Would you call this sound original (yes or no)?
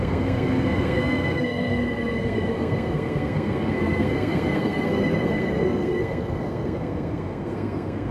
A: no